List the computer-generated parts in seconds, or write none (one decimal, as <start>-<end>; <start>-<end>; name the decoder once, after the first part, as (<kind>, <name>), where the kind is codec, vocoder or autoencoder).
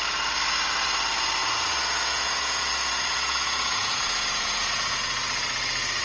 1.4-5.0 (vocoder, Vocos)